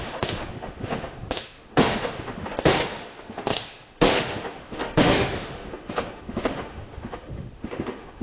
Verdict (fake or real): fake